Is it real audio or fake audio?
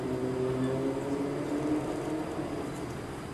real